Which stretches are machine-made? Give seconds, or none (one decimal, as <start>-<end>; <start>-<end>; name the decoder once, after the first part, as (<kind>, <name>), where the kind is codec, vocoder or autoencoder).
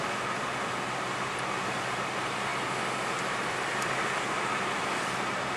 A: none